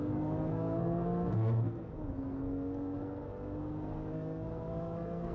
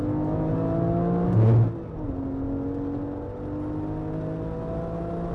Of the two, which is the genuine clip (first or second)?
second